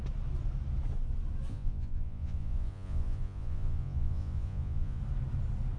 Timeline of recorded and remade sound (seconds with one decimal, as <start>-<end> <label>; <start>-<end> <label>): 0.0-1.5 recorded; 1.5-5.0 remade; 5.0-5.8 recorded